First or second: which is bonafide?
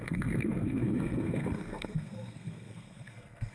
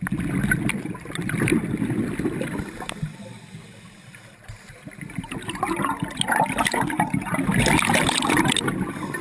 second